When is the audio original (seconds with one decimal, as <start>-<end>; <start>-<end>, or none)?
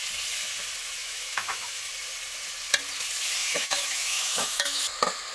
0.0-1.0; 1.9-3.4; 4.8-5.3